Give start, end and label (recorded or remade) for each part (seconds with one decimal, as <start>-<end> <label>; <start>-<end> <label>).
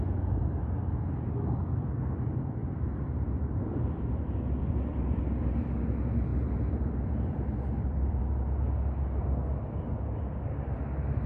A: 0.0-2.6 recorded; 2.6-5.2 remade; 5.2-6.3 recorded; 6.3-8.2 remade; 8.2-11.3 recorded